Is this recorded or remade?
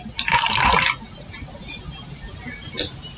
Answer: recorded